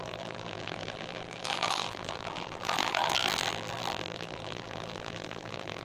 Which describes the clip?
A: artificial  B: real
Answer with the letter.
A